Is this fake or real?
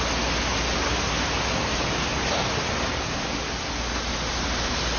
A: real